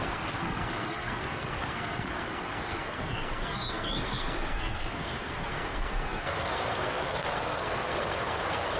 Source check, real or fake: fake